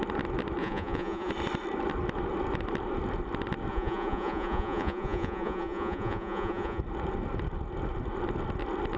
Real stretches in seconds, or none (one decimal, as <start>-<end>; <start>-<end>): 0.0-0.6; 1.3-3.7; 6.8-9.0